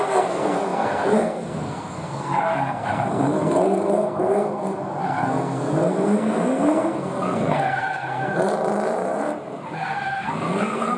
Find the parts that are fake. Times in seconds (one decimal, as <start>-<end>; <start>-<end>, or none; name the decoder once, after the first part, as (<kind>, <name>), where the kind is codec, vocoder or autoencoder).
0.0-8.5 (codec, SNAC); 9.7-11.0